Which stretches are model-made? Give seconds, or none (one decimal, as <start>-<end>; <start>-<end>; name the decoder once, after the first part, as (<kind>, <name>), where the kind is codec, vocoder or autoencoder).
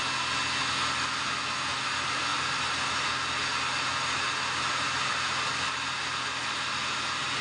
none